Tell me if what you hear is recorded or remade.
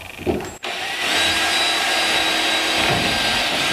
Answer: recorded